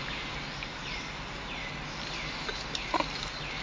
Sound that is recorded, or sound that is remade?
recorded